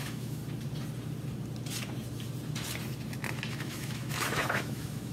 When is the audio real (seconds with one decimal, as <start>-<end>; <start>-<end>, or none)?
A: 0.4-3.5